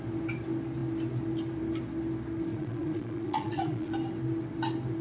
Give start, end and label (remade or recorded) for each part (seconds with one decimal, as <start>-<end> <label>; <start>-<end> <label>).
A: 0.0-2.5 recorded; 2.5-3.9 remade; 3.9-5.0 recorded